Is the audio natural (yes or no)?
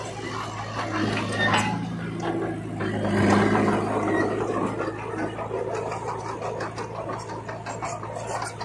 yes